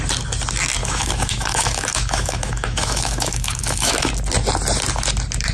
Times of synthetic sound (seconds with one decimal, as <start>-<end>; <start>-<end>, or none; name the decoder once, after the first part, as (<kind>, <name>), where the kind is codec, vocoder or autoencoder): 0.8-4.1 (autoencoder, DAC-VAE)